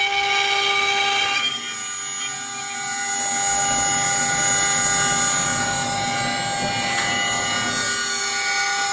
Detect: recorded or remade recorded